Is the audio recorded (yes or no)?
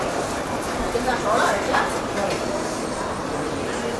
yes